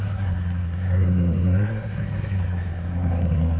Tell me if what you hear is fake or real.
fake